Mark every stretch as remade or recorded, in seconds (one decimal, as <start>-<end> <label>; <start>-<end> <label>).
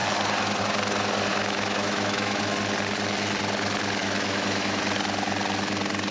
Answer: 0.0-1.3 recorded; 1.3-2.4 remade; 2.4-4.0 recorded; 4.0-4.8 remade; 4.8-6.1 recorded